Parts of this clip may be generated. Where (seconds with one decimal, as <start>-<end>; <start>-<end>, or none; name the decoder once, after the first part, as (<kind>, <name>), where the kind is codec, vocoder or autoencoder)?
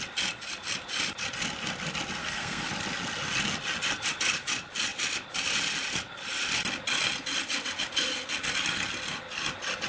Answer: 2.2-2.7 (codec, SNAC)